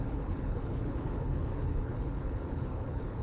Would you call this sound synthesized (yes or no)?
yes